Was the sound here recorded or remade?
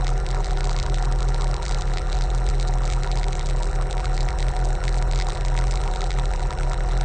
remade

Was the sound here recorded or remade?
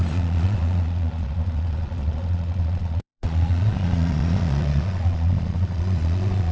remade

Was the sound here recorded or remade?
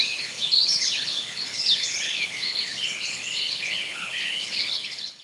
remade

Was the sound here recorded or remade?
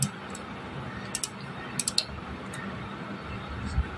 recorded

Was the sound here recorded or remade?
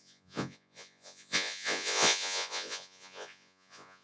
remade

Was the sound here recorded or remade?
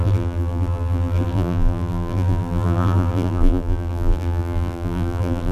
remade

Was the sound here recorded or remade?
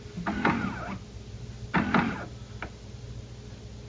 recorded